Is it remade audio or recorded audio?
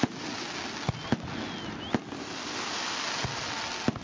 recorded